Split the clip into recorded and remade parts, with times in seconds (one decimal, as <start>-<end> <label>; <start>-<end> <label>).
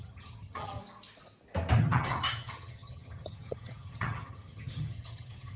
0.0-0.8 remade; 0.8-1.8 recorded; 1.8-5.6 remade